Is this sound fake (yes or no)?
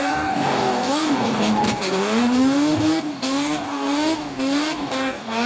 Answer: yes